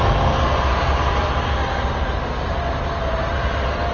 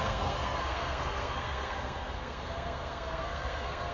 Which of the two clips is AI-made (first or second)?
second